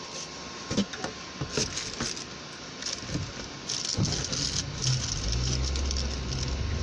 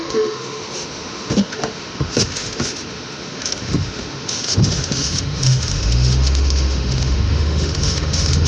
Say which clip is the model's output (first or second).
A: second